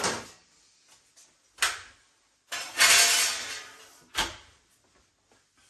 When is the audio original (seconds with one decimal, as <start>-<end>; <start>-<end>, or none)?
0.0-5.7